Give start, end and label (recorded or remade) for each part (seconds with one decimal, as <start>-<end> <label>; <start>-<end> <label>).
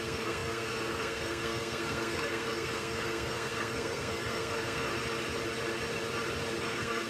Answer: 0.0-4.9 remade; 4.9-6.6 recorded; 6.6-7.1 remade